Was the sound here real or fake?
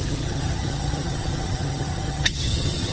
fake